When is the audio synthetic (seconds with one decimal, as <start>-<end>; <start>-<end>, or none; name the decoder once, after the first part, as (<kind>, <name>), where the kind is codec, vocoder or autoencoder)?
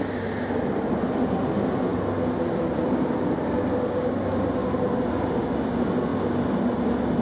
none